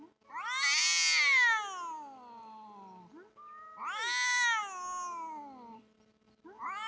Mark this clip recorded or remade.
recorded